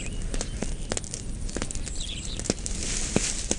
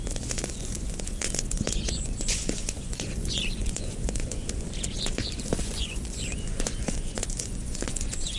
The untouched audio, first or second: first